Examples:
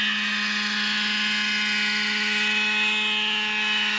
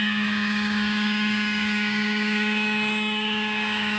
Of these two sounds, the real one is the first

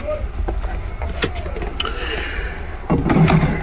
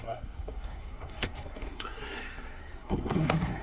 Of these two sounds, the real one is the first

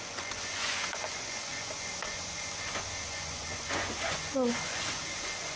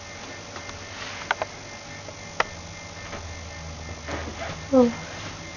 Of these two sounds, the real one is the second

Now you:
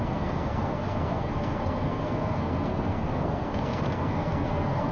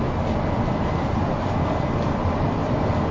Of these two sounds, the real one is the second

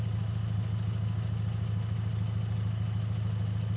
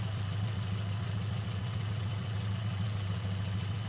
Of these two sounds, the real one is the first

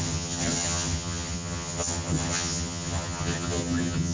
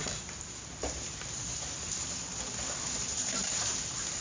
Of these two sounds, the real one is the second